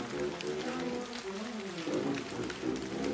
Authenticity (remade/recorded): recorded